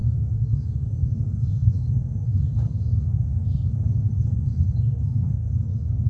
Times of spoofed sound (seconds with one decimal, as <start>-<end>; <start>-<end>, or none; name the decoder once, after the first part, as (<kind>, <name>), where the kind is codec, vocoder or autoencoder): 0.0-6.1 (codec, SNAC)